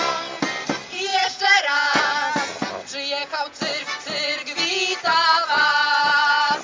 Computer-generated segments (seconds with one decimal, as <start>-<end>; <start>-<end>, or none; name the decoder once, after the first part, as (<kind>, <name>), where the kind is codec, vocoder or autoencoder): 1.1-2.0 (vocoder, Vocos); 3.2-3.8